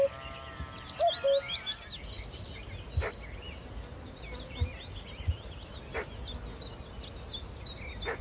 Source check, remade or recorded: recorded